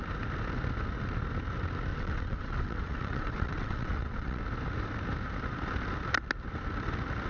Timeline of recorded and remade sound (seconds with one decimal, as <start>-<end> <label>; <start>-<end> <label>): 0.0-1.9 recorded; 1.9-4.4 remade; 4.4-7.3 recorded